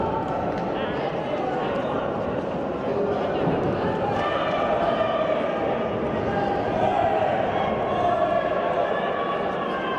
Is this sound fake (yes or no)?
no